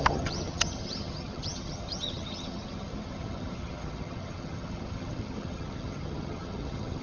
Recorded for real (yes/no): no